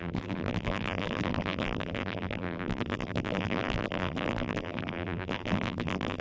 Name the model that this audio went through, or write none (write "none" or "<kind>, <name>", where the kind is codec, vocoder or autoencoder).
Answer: vocoder, BigVGAN v2